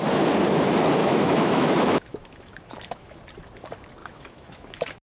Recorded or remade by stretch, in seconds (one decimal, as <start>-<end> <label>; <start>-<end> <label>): 0.0-1.0 recorded; 1.0-3.2 remade; 3.2-4.0 recorded; 4.0-5.0 remade